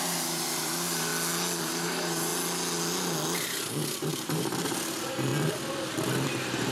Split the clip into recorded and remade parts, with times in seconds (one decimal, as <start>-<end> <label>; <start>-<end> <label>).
0.0-1.1 remade; 1.1-1.6 recorded; 1.6-2.3 remade; 2.3-3.6 recorded; 3.6-5.3 remade; 5.3-5.9 recorded; 5.9-6.7 remade